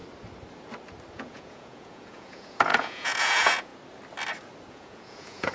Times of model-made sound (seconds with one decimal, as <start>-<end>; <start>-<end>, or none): 1.1-3.7; 4.7-5.5